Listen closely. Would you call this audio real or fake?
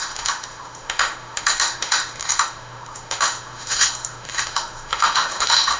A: fake